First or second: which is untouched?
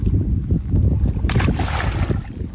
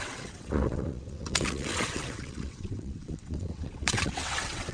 first